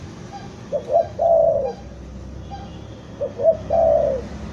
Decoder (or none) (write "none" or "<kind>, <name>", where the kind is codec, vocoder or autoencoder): none